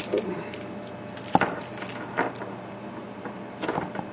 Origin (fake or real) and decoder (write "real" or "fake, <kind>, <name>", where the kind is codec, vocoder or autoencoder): real